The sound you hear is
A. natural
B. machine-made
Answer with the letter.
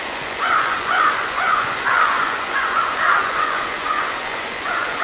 B